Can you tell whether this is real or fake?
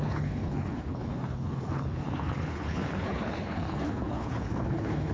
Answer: fake